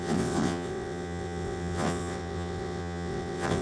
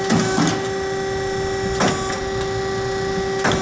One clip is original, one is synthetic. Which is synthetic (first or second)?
first